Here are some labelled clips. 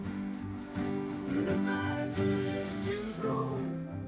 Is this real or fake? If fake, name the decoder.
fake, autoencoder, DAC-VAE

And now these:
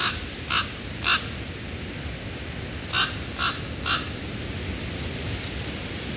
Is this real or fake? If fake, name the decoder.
real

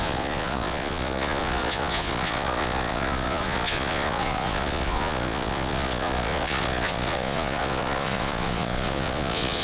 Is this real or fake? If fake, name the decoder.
fake, vocoder, Vocos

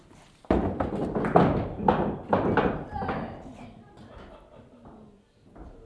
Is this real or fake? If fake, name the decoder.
real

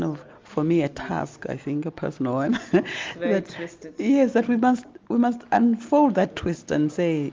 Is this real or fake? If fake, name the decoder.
real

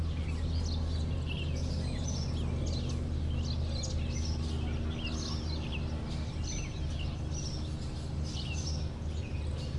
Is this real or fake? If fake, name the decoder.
real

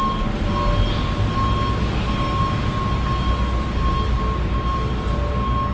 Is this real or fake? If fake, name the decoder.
real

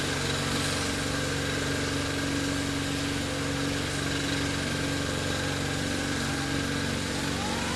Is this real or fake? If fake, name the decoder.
real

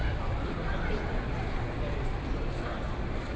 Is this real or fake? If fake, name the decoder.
real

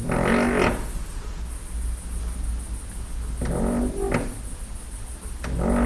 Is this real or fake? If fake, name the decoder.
real